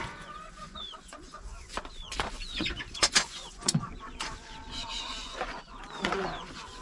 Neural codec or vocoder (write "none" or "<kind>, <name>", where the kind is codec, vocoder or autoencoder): vocoder, Vocos